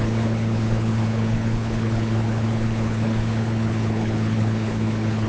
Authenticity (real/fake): fake